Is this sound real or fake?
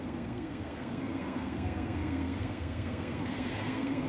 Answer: fake